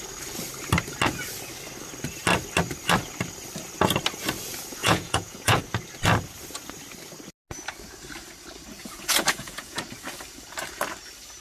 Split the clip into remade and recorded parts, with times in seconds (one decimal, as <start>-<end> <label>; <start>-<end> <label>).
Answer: 0.0-4.8 recorded; 4.8-5.6 remade; 5.6-8.8 recorded; 8.8-9.8 remade; 9.8-11.4 recorded